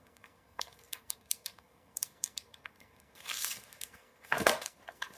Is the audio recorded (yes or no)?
no